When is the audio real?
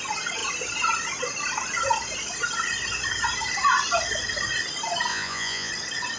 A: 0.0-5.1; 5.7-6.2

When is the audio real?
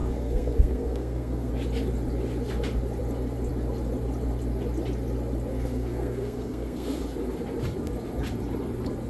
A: 1.5-5.5; 7.0-9.1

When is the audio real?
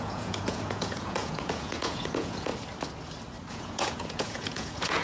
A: 2.5-3.5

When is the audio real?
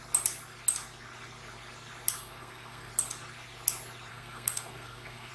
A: 0.0-2.2; 2.9-4.1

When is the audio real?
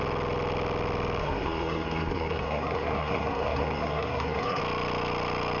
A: 0.0-1.2; 4.6-5.6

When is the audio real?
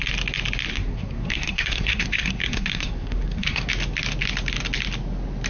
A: 0.0-0.7; 3.7-5.5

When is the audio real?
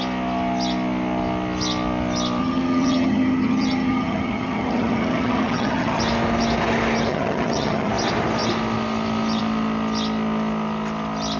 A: 0.0-2.4; 6.0-7.1; 7.9-11.4